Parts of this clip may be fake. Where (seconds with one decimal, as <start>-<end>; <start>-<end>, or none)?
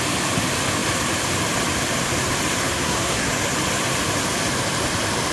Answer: 2.6-3.3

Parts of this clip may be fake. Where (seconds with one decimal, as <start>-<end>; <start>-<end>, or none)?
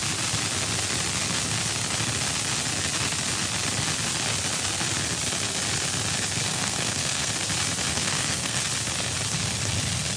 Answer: 6.5-7.3; 7.9-8.7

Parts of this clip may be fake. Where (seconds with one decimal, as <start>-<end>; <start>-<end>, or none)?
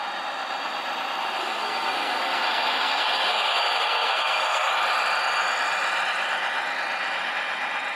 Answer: 1.4-4.7